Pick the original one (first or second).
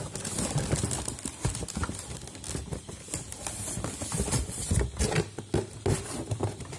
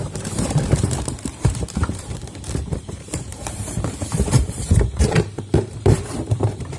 first